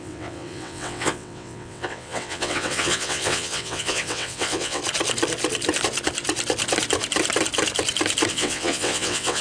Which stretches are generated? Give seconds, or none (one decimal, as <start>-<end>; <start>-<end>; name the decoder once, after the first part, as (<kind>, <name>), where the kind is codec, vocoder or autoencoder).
0.0-4.8 (vocoder, WaveNeXt); 8.3-9.4